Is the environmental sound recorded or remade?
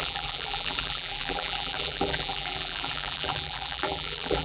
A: remade